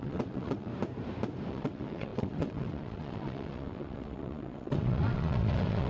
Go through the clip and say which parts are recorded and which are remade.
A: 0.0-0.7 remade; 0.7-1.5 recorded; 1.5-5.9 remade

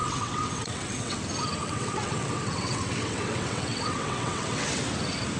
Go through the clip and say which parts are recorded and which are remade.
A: 0.0-1.2 remade; 1.2-1.6 recorded; 1.6-4.8 remade; 4.8-5.4 recorded

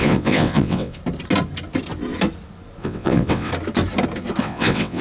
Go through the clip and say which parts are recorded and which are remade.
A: 0.0-1.0 remade; 1.0-2.8 recorded; 2.8-3.5 remade; 3.5-4.4 recorded; 4.4-5.0 remade

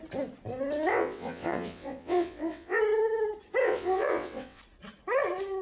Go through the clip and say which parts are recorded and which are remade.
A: 0.0-0.9 recorded; 0.9-2.8 remade; 2.8-3.6 recorded; 3.6-4.6 remade; 4.6-5.6 recorded

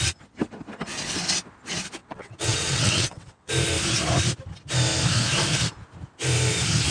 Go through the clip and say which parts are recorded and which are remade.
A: 0.0-2.0 recorded; 2.0-3.5 remade; 3.5-6.9 recorded